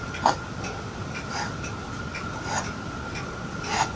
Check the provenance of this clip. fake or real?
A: real